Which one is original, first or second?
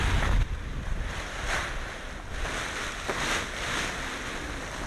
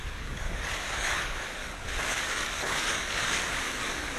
first